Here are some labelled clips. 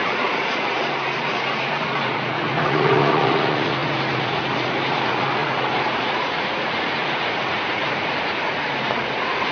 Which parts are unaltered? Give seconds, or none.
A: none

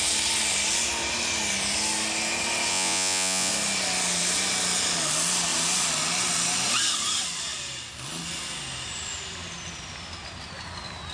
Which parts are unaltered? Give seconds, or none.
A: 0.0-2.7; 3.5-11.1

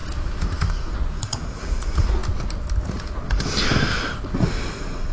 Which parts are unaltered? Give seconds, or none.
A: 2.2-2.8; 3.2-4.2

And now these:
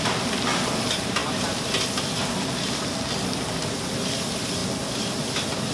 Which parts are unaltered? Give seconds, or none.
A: 0.0-5.7

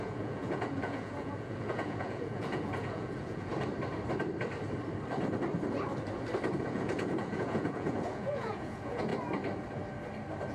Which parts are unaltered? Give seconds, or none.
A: 3.5-6.5; 9.1-10.5